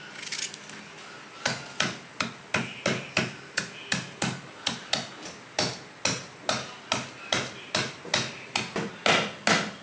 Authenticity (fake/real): real